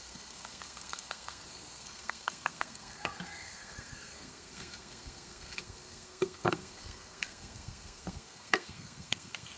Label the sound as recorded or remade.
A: remade